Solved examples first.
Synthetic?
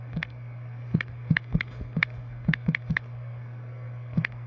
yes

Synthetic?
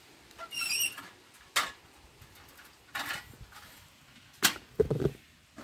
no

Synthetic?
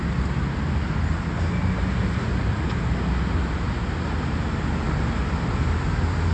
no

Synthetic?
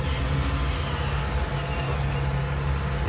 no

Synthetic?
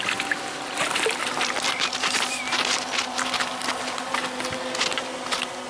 no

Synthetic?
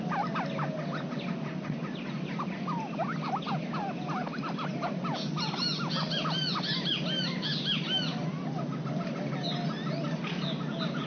no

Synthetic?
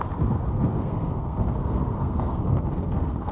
yes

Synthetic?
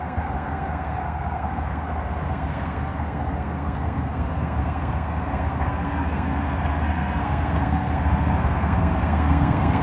yes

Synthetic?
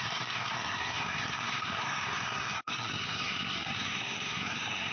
yes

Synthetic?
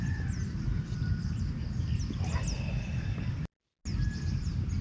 no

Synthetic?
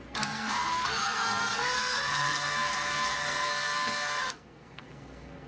yes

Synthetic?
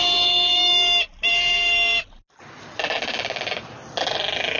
no